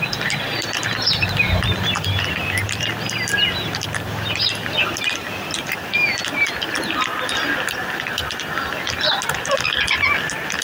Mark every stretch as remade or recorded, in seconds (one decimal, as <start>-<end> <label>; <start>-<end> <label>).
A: 0.0-10.6 recorded

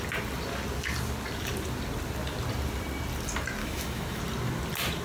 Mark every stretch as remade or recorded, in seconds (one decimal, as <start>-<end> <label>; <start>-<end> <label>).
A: 0.0-3.6 recorded; 3.6-4.2 remade; 4.2-5.0 recorded

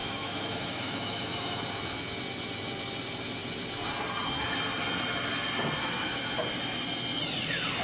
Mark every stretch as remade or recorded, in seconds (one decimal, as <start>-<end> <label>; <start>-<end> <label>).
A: 0.0-1.6 remade; 1.6-5.8 recorded; 5.8-6.3 remade; 6.3-7.8 recorded

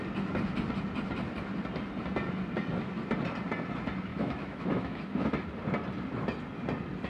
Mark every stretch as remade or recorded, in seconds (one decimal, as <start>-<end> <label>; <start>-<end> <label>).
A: 0.0-4.1 recorded; 4.1-5.3 remade; 5.3-7.1 recorded